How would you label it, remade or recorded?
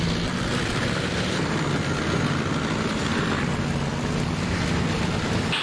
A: recorded